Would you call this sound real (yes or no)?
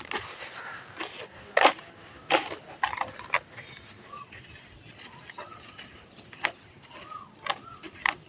yes